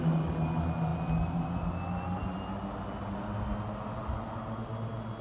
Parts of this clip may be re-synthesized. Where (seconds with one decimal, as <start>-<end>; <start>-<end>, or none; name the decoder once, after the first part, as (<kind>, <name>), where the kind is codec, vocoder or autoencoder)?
none